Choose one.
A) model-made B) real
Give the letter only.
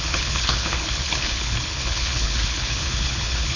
A